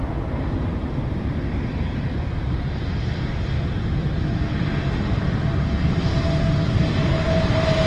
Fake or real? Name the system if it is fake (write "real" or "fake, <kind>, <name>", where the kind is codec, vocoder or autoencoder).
real